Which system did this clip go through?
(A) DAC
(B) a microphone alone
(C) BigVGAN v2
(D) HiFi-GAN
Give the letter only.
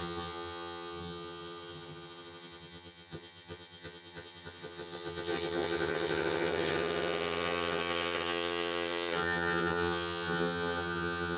D